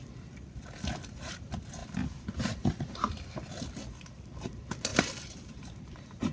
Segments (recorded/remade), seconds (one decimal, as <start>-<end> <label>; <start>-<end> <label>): 0.0-4.9 recorded; 4.9-5.7 remade; 5.7-6.3 recorded